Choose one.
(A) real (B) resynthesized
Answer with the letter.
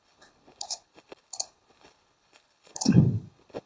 B